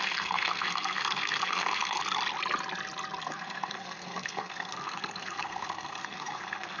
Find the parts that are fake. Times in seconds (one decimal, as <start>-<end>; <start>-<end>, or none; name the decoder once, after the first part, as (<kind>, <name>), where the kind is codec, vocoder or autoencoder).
0.0-2.0 (codec, SNAC); 3.2-6.8